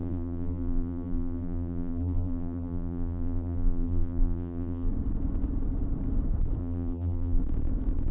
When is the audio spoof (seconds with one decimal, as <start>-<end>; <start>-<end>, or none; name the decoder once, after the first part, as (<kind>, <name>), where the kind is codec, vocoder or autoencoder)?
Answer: 0.0-4.9 (vocoder, BigVGAN v2); 6.6-7.4